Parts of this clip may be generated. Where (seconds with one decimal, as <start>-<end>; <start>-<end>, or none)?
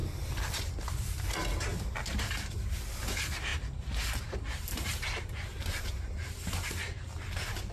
0.0-0.7; 1.7-2.3; 5.5-6.3